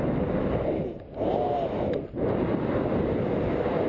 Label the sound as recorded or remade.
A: recorded